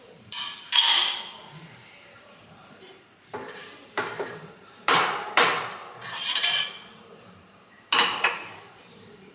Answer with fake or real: fake